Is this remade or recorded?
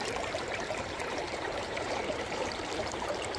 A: remade